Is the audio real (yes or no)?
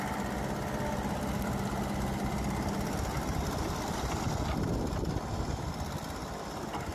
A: yes